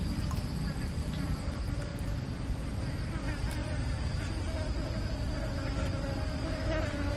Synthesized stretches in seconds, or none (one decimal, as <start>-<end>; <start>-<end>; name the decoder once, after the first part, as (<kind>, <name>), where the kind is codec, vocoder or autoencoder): none